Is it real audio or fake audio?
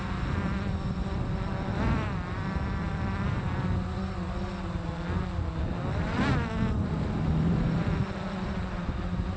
real